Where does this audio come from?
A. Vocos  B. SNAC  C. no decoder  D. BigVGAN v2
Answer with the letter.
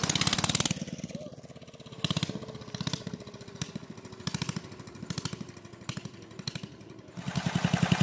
C